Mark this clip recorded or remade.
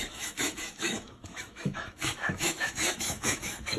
remade